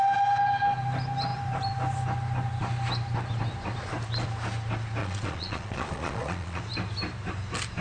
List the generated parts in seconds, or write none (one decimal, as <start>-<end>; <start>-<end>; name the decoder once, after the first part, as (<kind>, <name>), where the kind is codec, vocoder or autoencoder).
5.0-6.6 (vocoder, Vocos)